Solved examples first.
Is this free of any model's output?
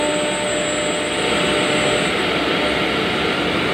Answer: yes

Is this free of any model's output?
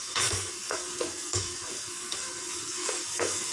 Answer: no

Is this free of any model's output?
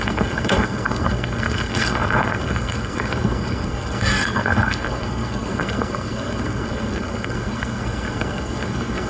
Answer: no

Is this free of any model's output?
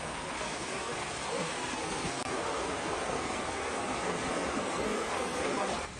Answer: no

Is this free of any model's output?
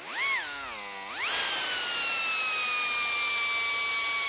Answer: yes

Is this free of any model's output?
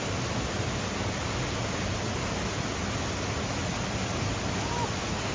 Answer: yes